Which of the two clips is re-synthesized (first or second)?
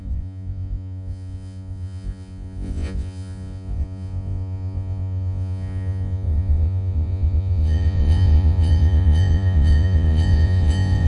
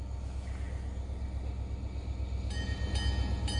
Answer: first